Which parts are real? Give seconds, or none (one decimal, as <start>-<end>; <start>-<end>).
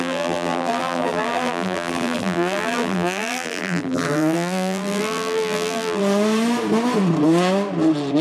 6.0-8.2